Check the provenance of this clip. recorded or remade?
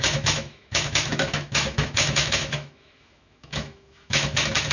remade